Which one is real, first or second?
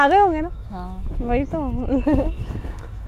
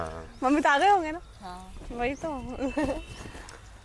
second